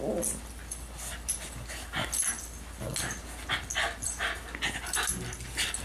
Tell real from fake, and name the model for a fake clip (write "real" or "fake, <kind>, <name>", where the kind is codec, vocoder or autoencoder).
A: real